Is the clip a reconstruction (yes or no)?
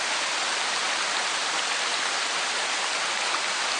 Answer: no